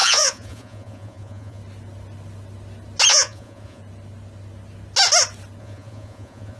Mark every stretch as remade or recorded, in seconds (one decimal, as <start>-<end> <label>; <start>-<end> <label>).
0.0-1.6 remade; 1.6-3.1 recorded; 3.1-3.8 remade; 3.8-5.6 recorded; 5.6-6.6 remade